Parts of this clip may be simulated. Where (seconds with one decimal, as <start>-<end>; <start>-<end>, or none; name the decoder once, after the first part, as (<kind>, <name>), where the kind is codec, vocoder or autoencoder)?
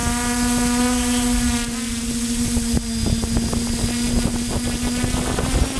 none